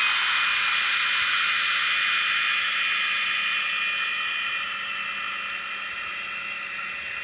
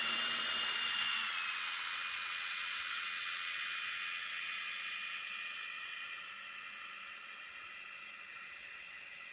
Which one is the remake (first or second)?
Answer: second